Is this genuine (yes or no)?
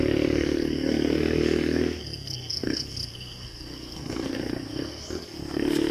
no